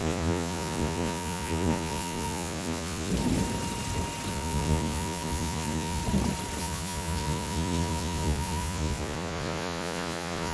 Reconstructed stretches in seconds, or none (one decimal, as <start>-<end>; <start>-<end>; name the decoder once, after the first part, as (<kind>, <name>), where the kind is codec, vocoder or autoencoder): 0.0-3.1 (vocoder, Vocos); 4.3-6.0; 6.6-10.5